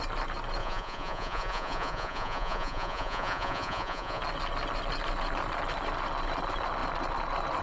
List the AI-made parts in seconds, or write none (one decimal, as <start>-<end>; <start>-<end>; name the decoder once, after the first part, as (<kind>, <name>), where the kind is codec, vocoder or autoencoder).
0.6-4.2 (vocoder, Vocos)